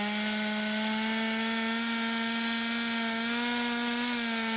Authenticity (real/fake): real